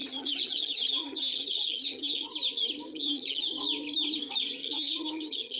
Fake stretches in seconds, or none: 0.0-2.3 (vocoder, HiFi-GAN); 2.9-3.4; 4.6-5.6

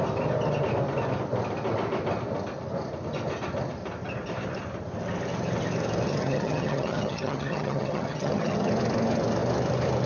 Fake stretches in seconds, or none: 6.1-8.7 (vocoder, HiFi-GAN)

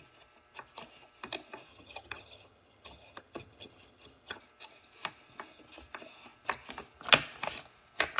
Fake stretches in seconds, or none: 1.7-4.4 (vocoder, HiFi-GAN)

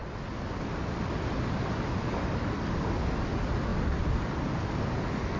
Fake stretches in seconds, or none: none

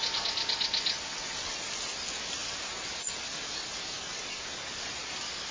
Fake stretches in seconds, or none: none

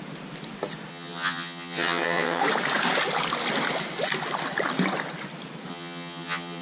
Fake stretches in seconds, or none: 0.9-2.4 (vocoder, HiFi-GAN); 5.7-6.6

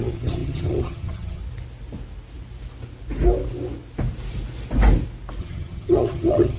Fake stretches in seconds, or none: 0.0-1.4 (vocoder, HiFi-GAN); 5.4-6.6

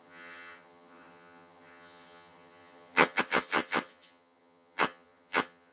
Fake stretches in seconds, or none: 0.0-5.7 (vocoder, HiFi-GAN)